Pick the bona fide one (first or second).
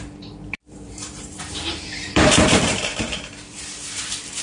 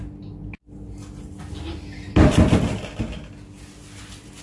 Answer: second